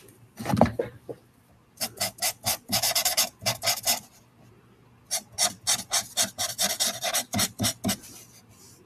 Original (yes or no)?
no